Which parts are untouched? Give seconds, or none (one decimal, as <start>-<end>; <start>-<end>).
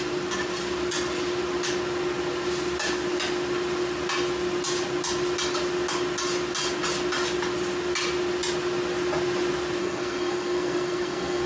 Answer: 0.0-9.8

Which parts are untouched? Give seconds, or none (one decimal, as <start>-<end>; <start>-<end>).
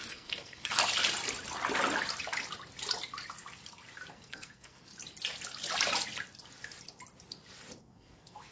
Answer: 0.8-4.1; 4.9-7.8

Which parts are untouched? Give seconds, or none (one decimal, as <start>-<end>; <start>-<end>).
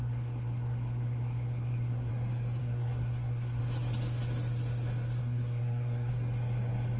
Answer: 2.1-2.6; 3.6-5.2; 6.1-7.0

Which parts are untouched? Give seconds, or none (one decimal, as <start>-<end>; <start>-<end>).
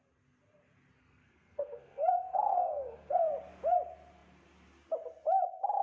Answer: 0.0-1.0; 3.3-5.8